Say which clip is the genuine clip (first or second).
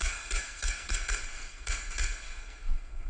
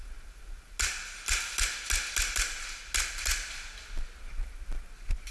second